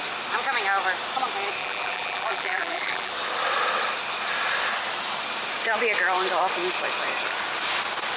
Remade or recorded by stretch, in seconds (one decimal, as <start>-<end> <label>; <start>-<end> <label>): 0.0-1.6 recorded; 1.6-3.1 remade; 3.1-8.2 recorded